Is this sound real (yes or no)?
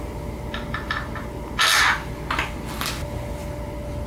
yes